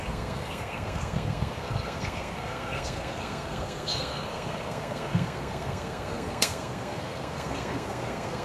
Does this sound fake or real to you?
fake